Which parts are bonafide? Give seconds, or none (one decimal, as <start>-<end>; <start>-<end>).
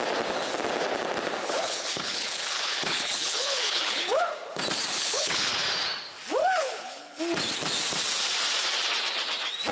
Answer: 0.0-1.4; 4.3-4.9; 5.5-6.4; 7.2-9.7